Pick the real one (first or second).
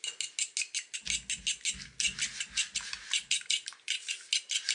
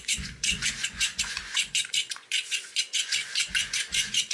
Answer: first